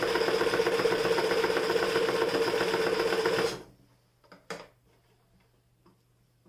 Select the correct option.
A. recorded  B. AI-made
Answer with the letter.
A